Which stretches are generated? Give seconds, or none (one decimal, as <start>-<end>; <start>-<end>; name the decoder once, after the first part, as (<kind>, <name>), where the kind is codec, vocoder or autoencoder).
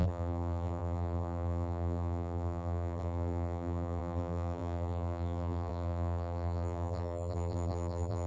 0.0-8.3 (vocoder, BigVGAN v2)